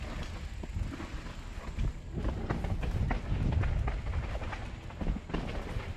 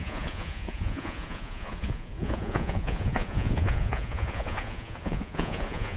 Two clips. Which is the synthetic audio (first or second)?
second